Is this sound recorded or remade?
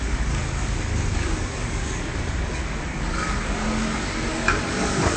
remade